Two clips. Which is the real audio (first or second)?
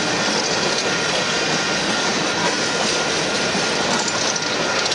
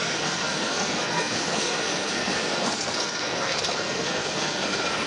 first